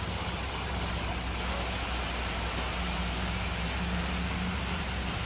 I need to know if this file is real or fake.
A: real